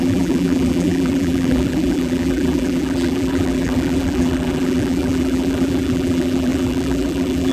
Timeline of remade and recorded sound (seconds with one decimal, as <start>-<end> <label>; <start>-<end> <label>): 0.0-7.5 remade